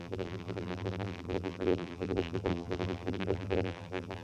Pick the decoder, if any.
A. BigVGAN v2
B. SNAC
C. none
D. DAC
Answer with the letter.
A